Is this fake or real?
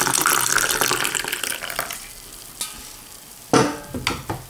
real